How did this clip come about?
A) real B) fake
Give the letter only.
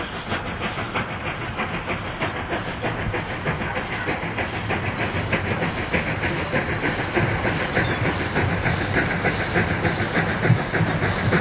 A